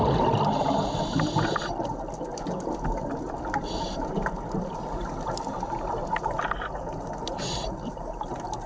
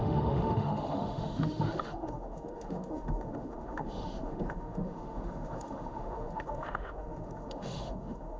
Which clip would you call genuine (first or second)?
first